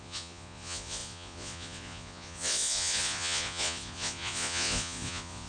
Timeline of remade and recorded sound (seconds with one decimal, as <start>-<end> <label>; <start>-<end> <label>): 0.0-5.5 remade